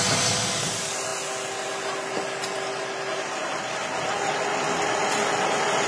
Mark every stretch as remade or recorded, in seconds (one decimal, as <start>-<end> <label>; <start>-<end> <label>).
0.0-5.9 recorded